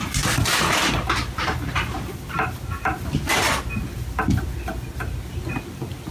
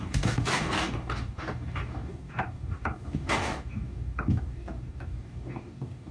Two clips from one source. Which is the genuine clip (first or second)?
first